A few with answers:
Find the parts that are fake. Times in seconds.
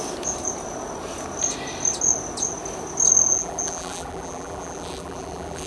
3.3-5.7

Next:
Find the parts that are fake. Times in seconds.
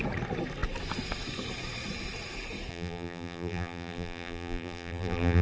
2.7-5.4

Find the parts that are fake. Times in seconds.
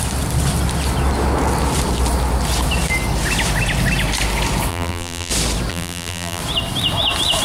4.7-5.3; 5.7-6.4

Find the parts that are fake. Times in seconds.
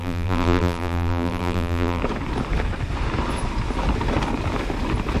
0.0-2.0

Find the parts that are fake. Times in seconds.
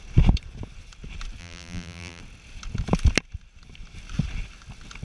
1.4-2.2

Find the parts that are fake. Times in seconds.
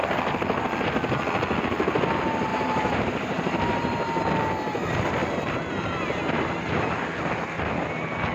2.5-4.2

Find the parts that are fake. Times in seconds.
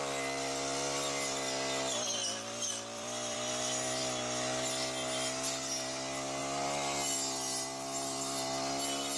2.2-4.0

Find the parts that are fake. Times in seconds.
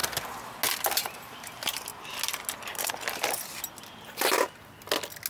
0.9-1.9